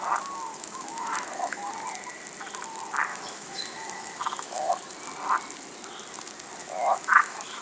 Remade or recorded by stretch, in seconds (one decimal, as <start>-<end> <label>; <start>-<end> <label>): 0.0-0.5 recorded; 0.5-1.7 remade; 1.7-3.1 recorded; 3.1-4.7 remade; 4.7-6.6 recorded; 6.6-7.6 remade